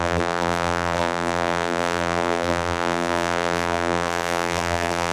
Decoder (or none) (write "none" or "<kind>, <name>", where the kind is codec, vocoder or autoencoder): vocoder, BigVGAN v2